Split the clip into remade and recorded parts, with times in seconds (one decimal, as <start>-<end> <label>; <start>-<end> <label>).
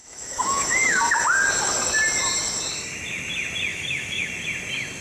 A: 0.0-1.0 remade; 1.0-3.7 recorded; 3.7-4.3 remade; 4.3-5.0 recorded